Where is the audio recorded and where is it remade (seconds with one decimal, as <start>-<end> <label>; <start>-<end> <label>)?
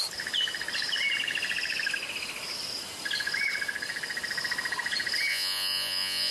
0.0-5.3 recorded; 5.3-6.3 remade